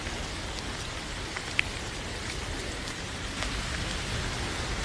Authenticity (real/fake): real